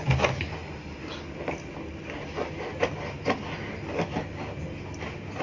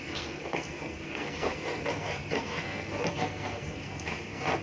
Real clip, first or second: first